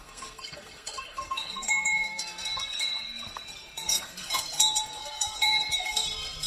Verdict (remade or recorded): remade